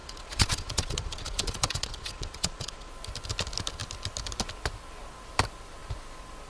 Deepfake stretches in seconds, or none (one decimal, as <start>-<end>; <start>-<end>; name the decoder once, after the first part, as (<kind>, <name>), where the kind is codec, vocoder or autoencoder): 0.0-2.9 (vocoder, Vocos)